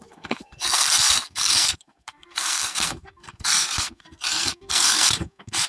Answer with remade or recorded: remade